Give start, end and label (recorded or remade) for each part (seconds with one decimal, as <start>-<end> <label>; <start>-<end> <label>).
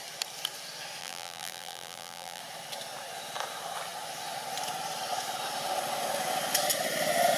0.0-1.0 recorded; 1.0-2.4 remade; 2.4-7.4 recorded